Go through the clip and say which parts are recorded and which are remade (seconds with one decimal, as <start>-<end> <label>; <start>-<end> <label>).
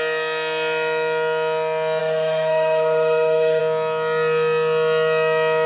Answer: 0.0-2.0 recorded; 2.0-3.6 remade; 3.6-5.7 recorded